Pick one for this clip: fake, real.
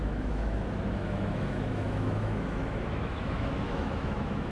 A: fake